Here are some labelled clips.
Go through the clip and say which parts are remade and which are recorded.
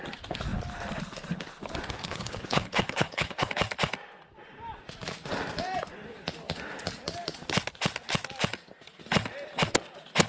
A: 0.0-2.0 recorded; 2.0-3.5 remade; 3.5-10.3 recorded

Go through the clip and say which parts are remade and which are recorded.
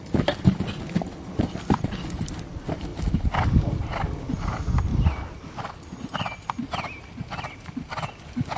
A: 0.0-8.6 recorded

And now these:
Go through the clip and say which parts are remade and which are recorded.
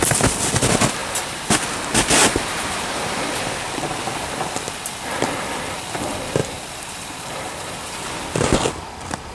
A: 0.0-1.0 recorded; 1.0-1.6 remade; 1.6-2.2 recorded; 2.2-3.1 remade; 3.1-6.4 recorded; 6.4-7.7 remade; 7.7-9.3 recorded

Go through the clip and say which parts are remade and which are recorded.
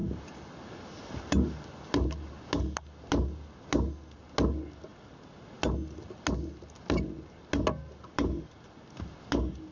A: 0.0-9.7 recorded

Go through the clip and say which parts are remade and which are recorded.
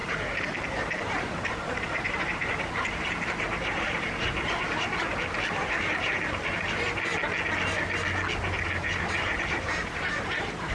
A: 0.0-7.1 remade; 7.1-8.6 recorded; 8.6-10.7 remade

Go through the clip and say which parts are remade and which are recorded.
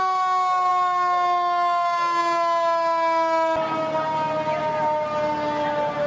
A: 0.0-6.1 recorded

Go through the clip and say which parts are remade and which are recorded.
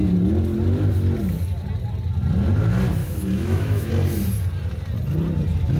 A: 0.0-3.0 recorded; 3.0-3.9 remade; 3.9-5.8 recorded